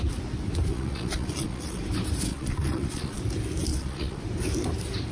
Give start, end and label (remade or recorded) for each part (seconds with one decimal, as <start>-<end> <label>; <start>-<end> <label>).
0.0-0.7 recorded; 0.7-1.8 remade; 1.8-2.3 recorded; 2.3-3.2 remade; 3.2-3.7 recorded; 3.7-4.2 remade; 4.2-5.1 recorded